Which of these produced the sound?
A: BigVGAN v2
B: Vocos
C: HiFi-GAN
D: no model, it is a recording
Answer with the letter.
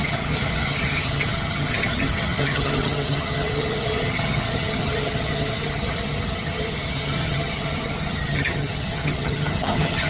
C